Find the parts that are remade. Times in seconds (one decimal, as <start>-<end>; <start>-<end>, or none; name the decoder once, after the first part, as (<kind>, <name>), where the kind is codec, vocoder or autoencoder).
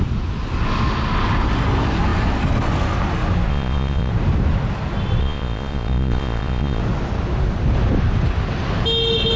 3.5-4.1 (vocoder, Vocos); 5.2-6.8